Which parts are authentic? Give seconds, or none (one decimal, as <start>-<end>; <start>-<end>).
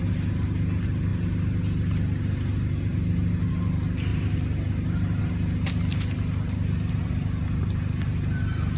0.0-8.8